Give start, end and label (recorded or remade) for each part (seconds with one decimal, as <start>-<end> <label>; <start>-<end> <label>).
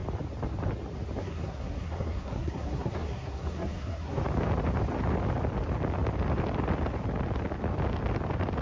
0.0-1.2 recorded; 1.2-4.2 remade; 4.2-8.6 recorded